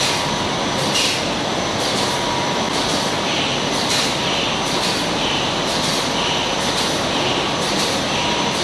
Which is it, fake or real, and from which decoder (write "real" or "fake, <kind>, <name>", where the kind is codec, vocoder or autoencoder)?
real